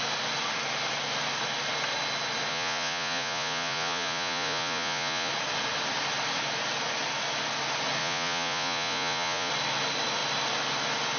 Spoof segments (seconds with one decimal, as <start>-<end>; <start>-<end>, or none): 2.5-5.3; 8.0-9.5